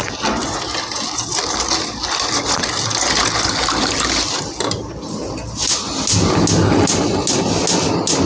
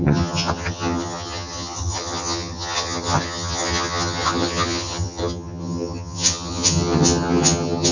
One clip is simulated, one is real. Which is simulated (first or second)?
second